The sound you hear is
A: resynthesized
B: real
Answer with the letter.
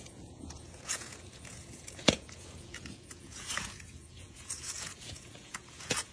A